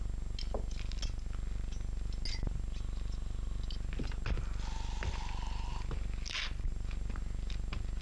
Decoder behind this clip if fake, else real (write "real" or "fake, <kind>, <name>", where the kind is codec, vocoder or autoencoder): real